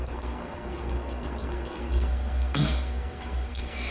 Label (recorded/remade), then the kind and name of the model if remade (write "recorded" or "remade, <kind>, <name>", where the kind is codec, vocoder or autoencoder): remade, codec, SNAC